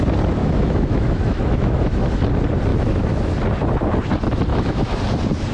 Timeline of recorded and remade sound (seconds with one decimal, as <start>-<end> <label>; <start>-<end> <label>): 0.0-0.4 recorded; 0.4-2.3 remade; 2.3-2.7 recorded; 2.7-3.3 remade; 3.3-4.5 recorded; 4.5-5.0 remade; 5.0-5.5 recorded